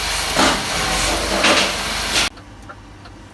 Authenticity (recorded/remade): recorded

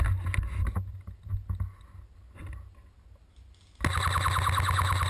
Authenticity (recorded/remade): recorded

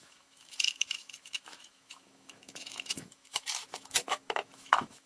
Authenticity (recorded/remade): remade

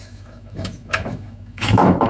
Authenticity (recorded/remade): remade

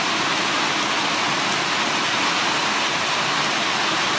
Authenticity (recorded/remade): recorded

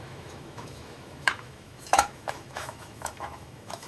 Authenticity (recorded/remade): remade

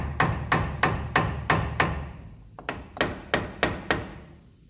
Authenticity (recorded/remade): recorded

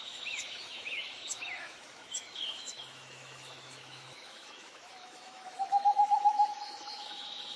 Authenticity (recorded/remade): remade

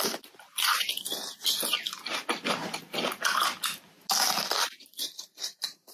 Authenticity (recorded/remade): recorded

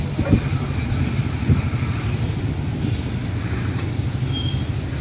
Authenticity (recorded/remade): recorded